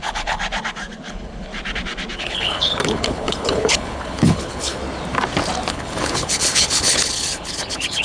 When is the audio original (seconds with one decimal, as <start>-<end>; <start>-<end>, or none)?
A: 0.4-1.1; 1.5-2.2; 4.8-5.7